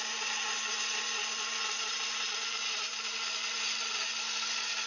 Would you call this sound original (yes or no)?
yes